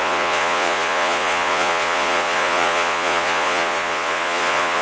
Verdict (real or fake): fake